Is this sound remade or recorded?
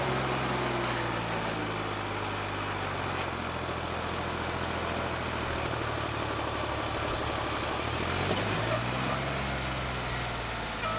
recorded